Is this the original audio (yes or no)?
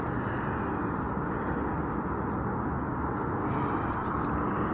yes